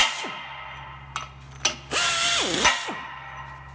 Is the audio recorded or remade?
recorded